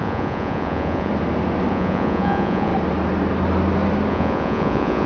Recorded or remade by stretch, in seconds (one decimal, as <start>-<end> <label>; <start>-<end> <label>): 0.0-1.1 remade; 1.1-1.7 recorded; 1.7-2.7 remade; 2.7-4.1 recorded; 4.1-5.1 remade